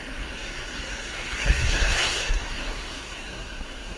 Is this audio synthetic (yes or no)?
yes